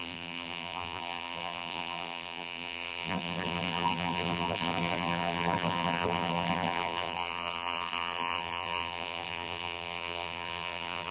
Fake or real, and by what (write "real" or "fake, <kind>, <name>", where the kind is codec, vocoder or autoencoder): fake, vocoder, BigVGAN v2